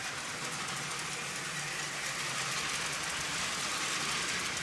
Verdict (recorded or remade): recorded